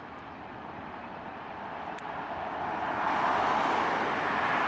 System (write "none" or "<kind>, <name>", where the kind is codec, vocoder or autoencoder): none